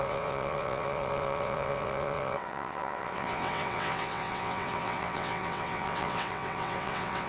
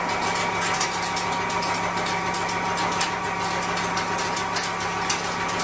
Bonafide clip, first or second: second